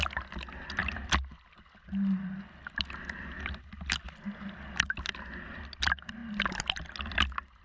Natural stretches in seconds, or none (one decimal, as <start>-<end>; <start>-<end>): 0.0-7.6